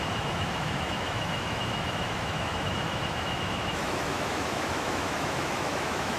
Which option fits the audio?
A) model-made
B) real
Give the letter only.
A